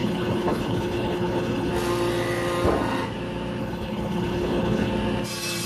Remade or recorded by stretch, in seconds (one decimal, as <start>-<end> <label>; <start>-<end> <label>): 0.0-1.7 remade; 1.7-3.6 recorded; 3.6-4.9 remade; 4.9-5.7 recorded